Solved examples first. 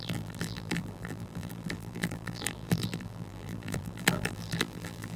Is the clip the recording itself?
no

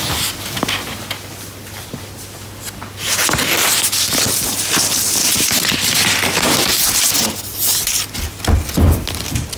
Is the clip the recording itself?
yes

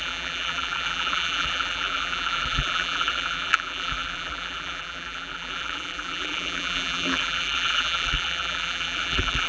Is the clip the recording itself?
no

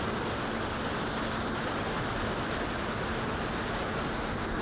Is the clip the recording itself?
yes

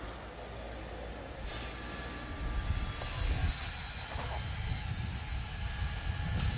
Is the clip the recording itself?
yes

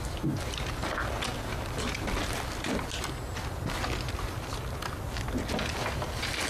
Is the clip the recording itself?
yes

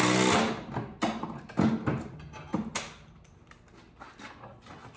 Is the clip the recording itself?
yes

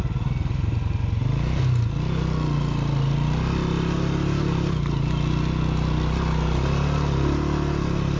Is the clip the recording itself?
yes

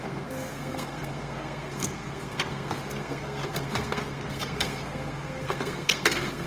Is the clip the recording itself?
no